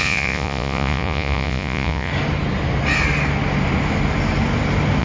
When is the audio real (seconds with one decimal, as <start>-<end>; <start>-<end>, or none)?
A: 2.1-5.0